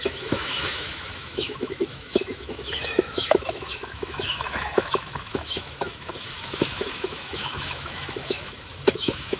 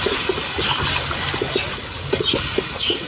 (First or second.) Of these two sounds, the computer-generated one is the first